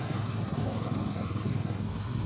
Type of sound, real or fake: fake